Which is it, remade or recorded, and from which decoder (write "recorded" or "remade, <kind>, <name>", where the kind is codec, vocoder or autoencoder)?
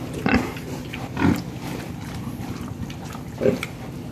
recorded